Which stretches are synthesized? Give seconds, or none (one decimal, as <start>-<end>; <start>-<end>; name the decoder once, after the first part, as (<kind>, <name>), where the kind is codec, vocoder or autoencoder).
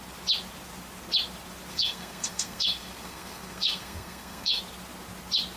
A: 1.7-4.6 (codec, SNAC)